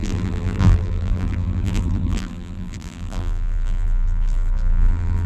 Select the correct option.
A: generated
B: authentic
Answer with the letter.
A